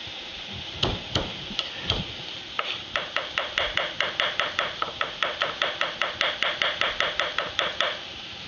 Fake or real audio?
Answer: real